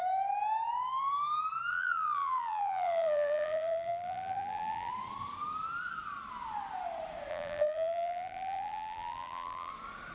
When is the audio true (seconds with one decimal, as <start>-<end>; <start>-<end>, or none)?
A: 0.0-1.7; 4.9-7.3; 9.7-10.1